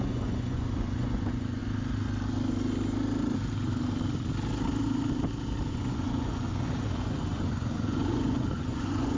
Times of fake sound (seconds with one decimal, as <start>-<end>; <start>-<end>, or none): 0.0-1.6; 5.7-9.2